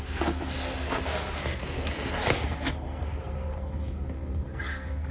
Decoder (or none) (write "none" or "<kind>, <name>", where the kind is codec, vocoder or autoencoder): codec, SNAC